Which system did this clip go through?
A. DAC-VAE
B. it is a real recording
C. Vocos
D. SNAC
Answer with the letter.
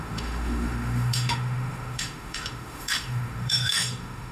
A